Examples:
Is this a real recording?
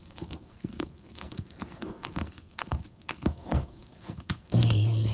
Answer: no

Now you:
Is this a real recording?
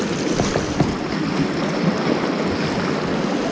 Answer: yes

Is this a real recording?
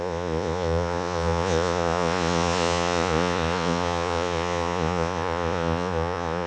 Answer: no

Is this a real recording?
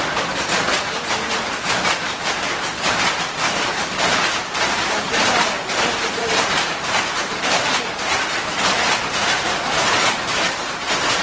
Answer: no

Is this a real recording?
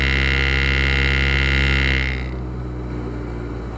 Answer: yes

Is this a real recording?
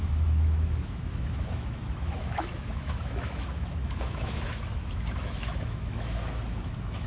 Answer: no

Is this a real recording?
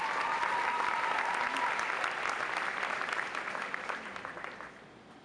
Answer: yes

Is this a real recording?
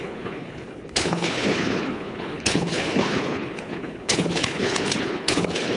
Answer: no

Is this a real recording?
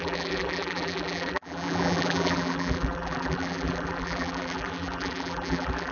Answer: no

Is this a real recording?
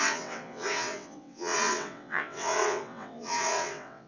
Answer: no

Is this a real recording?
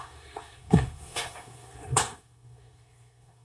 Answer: no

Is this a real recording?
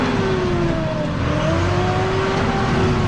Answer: yes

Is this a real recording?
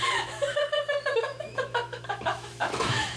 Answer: no